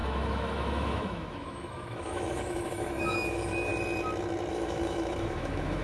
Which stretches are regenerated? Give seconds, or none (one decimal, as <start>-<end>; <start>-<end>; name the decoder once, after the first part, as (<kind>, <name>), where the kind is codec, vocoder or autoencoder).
0.0-3.7 (autoencoder, DAC-VAE); 4.5-5.8